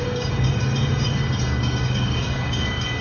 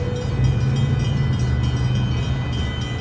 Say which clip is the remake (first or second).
first